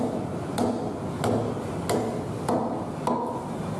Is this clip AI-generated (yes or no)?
no